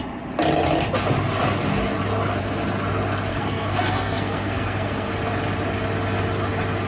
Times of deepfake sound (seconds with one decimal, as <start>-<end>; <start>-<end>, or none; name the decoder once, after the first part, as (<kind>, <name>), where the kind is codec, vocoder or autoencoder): 3.3-5.1 (codec, SNAC)